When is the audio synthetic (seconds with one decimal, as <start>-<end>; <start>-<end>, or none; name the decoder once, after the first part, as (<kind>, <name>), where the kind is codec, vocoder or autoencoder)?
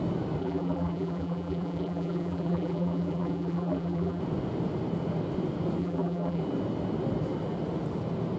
0.4-4.2 (vocoder, BigVGAN v2); 5.8-6.4